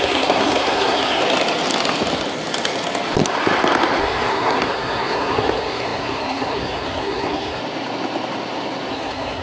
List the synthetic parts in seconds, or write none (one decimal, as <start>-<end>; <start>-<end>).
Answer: 0.0-1.2; 4.0-7.6; 8.9-9.4